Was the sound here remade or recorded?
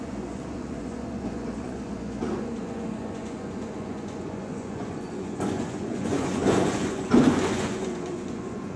remade